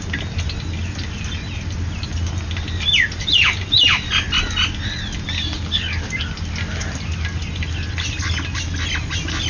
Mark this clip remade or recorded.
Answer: recorded